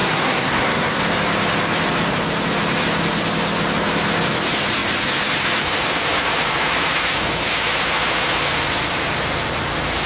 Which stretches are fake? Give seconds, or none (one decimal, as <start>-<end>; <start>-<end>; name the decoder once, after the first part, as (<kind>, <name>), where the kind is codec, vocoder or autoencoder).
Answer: 0.0-1.0 (codec, SNAC)